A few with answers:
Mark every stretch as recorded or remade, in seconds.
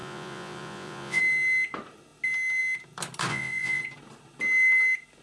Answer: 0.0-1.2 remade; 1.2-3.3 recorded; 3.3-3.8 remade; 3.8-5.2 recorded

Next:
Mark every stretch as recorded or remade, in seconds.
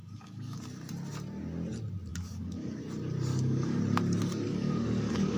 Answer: 0.0-0.6 remade; 0.6-2.1 recorded; 2.1-2.8 remade; 2.8-3.3 recorded; 3.3-3.8 remade; 3.8-4.5 recorded; 4.5-5.4 remade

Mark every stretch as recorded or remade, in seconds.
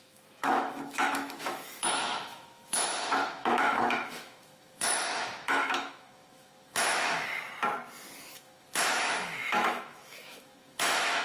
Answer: 0.0-7.3 remade; 7.3-8.3 recorded; 8.3-11.2 remade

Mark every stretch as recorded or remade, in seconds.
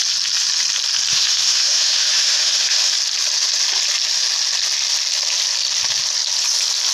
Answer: 0.0-1.1 recorded; 1.1-2.9 remade; 2.9-6.9 recorded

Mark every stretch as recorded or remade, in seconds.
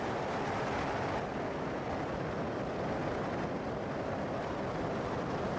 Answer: 0.0-5.6 recorded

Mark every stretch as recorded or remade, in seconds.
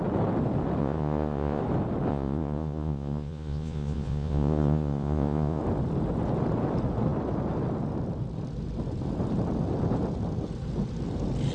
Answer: 0.0-0.8 recorded; 0.8-1.6 remade; 1.6-2.1 recorded; 2.1-5.6 remade; 5.6-11.5 recorded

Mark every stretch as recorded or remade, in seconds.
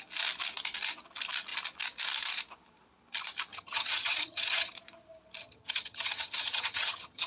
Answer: 0.0-3.5 recorded; 3.5-4.7 remade; 4.7-5.4 recorded; 5.4-7.3 remade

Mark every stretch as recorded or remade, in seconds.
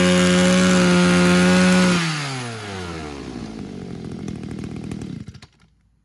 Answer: 0.0-3.2 recorded; 3.2-4.2 remade; 4.2-6.0 recorded